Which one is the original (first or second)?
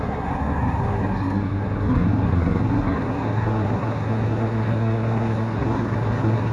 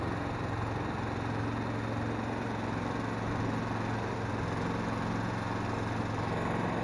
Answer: second